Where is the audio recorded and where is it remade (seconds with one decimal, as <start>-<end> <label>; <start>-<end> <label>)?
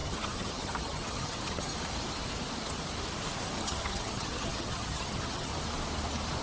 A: 0.0-1.7 remade; 1.7-3.6 recorded; 3.6-5.5 remade; 5.5-6.4 recorded